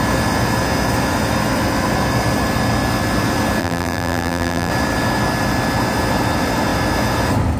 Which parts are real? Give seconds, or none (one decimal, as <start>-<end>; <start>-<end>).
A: 0.0-3.6; 4.7-7.6